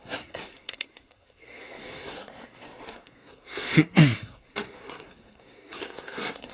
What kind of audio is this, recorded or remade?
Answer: remade